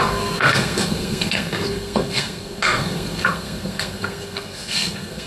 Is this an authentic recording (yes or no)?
no